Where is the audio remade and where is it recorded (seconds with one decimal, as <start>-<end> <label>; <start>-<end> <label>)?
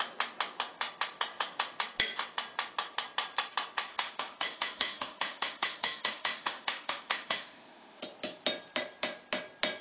0.0-3.9 recorded; 3.9-8.0 remade; 8.0-9.8 recorded